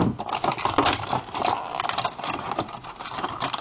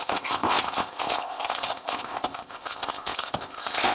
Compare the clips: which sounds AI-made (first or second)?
second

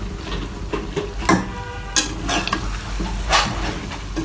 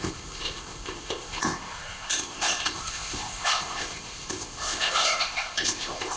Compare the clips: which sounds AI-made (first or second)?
second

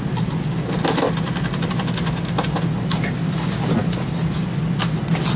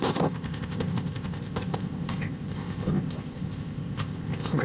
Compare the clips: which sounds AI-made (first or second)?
second